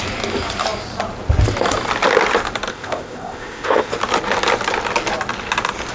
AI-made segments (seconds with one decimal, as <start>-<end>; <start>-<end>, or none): 2.7-3.9

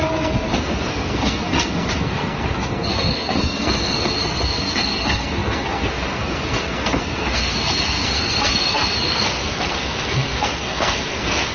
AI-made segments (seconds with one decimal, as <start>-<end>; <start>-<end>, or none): 0.0-11.5

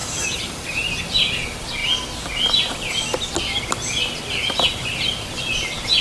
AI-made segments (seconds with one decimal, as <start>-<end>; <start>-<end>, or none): 0.0-1.0

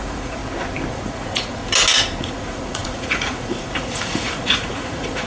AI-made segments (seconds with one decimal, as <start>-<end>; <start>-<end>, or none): 0.0-0.4; 0.9-1.6; 2.2-5.3

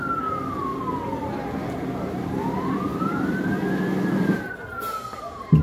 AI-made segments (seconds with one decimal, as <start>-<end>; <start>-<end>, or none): none

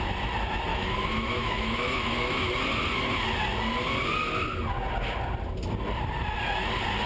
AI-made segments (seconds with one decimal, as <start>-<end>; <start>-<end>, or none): 0.7-2.5

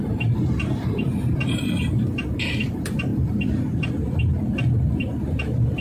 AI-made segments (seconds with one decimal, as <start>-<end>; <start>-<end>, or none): 0.0-1.7